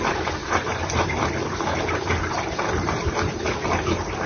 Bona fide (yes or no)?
no